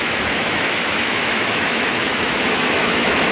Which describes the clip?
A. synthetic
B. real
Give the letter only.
A